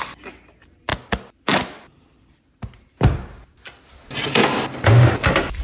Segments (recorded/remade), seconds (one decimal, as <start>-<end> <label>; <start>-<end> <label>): 0.0-5.6 recorded